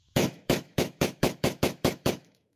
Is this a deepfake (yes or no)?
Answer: yes